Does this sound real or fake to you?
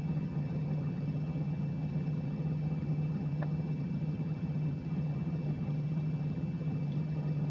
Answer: fake